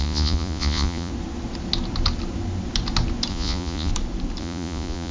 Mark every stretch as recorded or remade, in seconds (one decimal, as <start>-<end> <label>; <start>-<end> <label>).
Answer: 0.0-1.1 remade; 1.1-3.3 recorded; 3.3-3.9 remade; 3.9-4.4 recorded; 4.4-5.1 remade